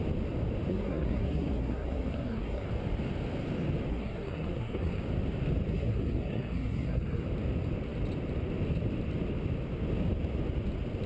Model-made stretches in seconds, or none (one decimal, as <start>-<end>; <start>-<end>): 0.7-2.7; 3.9-5.0; 5.7-7.3